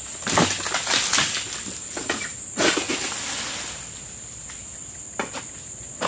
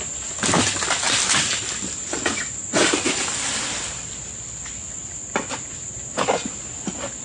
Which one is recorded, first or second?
first